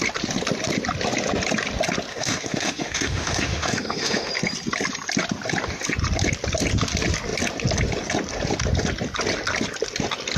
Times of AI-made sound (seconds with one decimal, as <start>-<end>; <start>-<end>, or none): 2.1-4.3